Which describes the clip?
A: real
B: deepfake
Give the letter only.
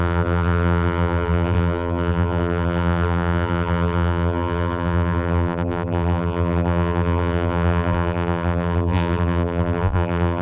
B